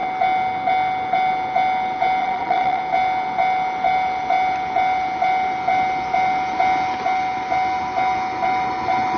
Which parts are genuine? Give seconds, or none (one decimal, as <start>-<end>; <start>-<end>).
0.0-2.2; 2.8-9.2